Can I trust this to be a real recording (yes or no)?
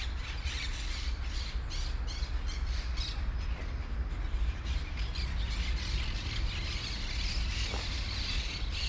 yes